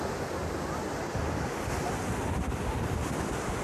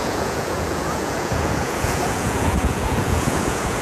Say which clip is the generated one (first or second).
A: second